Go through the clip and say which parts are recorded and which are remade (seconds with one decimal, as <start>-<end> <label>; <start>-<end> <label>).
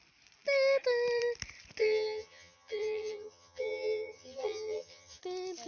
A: 0.0-1.8 recorded; 1.8-5.2 remade; 5.2-5.7 recorded